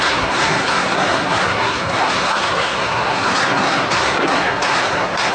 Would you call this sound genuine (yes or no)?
no